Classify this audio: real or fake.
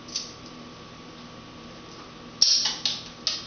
real